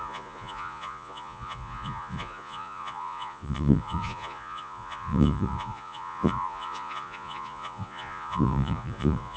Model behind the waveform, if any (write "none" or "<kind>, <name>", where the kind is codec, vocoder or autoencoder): vocoder, Vocos